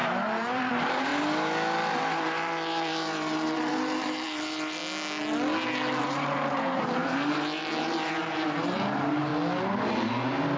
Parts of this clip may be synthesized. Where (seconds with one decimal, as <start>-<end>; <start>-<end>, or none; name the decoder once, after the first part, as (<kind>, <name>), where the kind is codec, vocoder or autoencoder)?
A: 0.0-1.1 (vocoder, BigVGAN v2); 1.9-4.8; 6.0-9.3